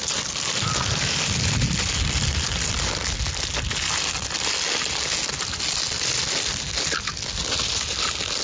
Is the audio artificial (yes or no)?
no